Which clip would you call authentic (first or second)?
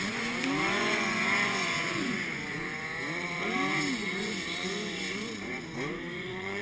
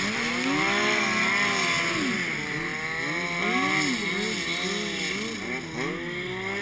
second